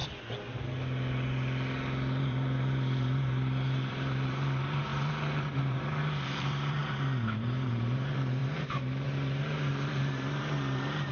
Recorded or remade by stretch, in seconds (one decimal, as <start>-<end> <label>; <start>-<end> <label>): 0.0-2.2 recorded; 2.2-11.1 remade